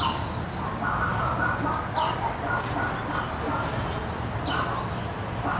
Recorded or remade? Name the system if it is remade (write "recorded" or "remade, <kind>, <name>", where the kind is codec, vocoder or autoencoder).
recorded